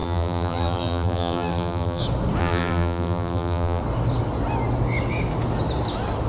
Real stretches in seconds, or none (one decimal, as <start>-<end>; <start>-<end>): 2.0-2.4; 3.8-6.3